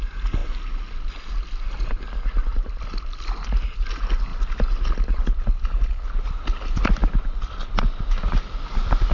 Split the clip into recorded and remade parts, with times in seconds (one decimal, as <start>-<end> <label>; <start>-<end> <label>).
0.0-9.1 recorded